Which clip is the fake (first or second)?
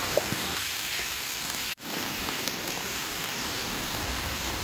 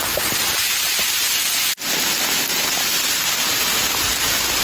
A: first